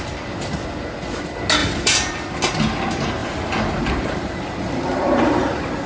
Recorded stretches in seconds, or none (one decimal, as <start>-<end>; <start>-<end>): 0.0-1.6; 2.4-3.2